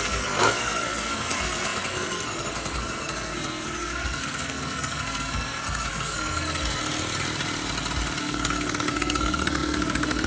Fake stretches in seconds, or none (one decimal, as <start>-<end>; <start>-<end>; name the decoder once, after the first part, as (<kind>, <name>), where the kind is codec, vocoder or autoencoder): 0.0-6.8 (codec, SNAC); 8.2-10.3